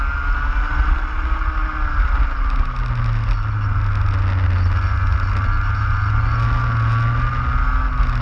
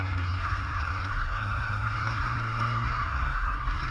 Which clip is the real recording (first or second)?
first